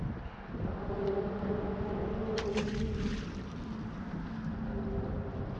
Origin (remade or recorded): recorded